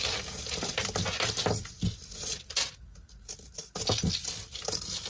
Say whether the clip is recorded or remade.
recorded